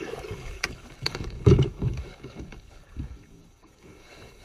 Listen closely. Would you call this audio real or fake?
fake